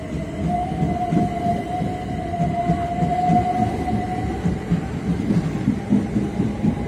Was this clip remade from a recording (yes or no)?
no